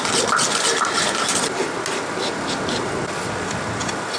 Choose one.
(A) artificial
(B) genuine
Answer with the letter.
B